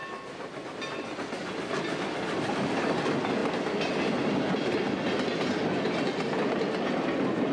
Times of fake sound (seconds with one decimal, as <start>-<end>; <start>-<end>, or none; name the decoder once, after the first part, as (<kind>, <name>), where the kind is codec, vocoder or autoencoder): none